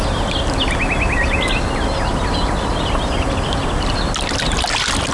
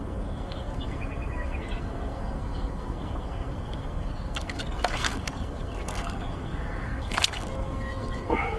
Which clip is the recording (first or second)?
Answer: first